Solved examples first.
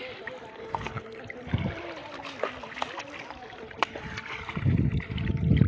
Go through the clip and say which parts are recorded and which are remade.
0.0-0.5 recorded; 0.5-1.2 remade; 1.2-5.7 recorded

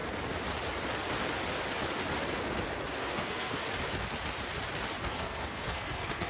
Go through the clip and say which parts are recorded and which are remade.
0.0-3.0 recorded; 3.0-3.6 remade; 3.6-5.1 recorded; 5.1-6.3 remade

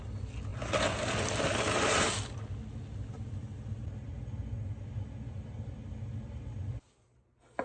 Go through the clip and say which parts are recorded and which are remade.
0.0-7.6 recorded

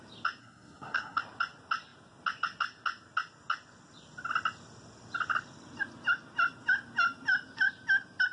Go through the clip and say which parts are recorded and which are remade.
0.0-0.4 recorded; 0.4-1.2 remade; 1.2-8.3 recorded